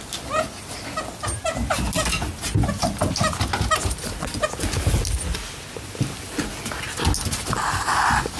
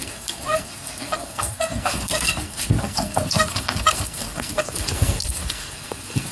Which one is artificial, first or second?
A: second